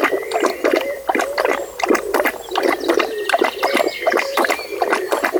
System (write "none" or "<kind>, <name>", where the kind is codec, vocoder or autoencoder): none